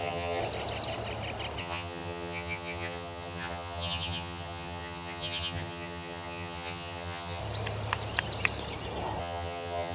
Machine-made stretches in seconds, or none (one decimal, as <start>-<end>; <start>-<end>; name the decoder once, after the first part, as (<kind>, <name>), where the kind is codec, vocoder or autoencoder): 0.0-0.4 (vocoder, HiFi-GAN); 1.6-7.4; 9.2-9.9